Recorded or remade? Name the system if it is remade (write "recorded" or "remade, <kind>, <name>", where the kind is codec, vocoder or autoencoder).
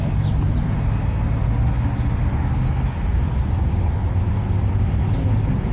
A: recorded